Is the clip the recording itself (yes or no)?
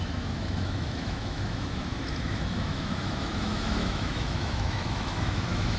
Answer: no